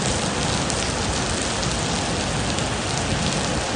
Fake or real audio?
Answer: real